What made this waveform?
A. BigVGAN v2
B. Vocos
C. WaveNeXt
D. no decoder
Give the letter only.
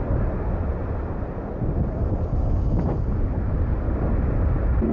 D